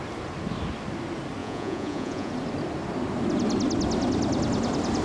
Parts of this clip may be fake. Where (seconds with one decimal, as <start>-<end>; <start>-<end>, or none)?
1.4-2.3